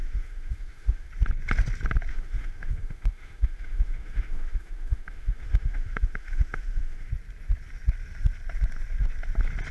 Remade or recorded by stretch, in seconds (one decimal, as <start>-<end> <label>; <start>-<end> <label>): 0.0-1.1 remade; 1.1-2.1 recorded; 2.1-7.1 remade; 7.1-9.7 recorded